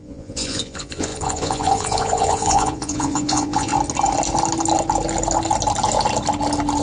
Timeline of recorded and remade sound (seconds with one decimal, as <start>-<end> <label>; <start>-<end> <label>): 0.0-3.7 remade; 3.7-6.8 recorded